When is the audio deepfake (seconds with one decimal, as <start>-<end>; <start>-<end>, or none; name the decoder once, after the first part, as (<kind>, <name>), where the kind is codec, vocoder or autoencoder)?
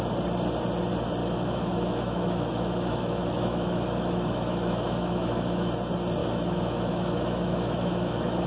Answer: 1.2-5.7 (autoencoder, DAC-VAE); 6.2-8.5